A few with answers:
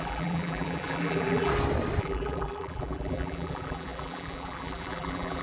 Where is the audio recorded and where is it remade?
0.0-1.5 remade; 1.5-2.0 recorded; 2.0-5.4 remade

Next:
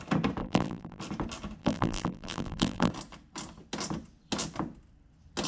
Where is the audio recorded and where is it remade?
0.0-0.4 recorded; 0.4-1.0 remade; 1.0-1.6 recorded; 1.6-2.9 remade; 2.9-5.5 recorded

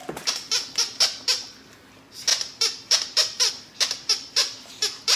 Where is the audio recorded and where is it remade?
0.0-5.2 remade

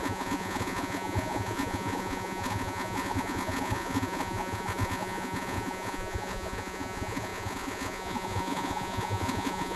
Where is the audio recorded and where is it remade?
0.0-9.8 remade

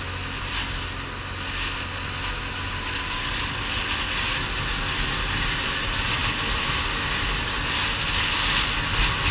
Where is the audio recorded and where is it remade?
0.0-9.3 recorded

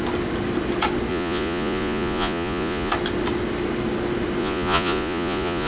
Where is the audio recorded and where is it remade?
0.0-1.1 recorded; 1.1-2.9 remade; 2.9-4.4 recorded; 4.4-5.7 remade